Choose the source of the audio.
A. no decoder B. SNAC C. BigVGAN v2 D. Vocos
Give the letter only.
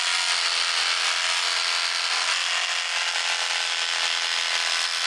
A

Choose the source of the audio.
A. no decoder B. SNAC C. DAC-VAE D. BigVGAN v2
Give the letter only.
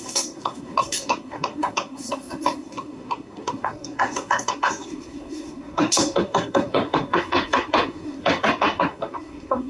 B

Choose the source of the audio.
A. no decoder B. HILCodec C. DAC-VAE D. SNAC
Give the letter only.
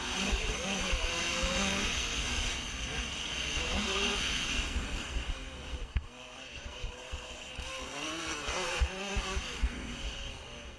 D